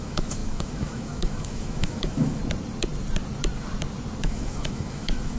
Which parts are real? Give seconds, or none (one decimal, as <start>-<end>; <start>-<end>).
2.4-4.2

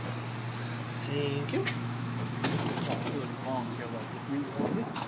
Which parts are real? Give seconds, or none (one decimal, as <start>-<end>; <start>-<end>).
0.0-1.6; 2.6-3.4